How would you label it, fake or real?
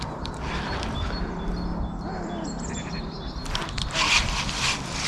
real